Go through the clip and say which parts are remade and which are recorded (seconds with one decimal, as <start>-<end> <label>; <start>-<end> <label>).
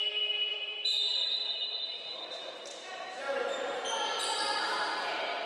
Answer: 0.0-0.5 recorded; 0.5-3.8 remade; 3.8-5.5 recorded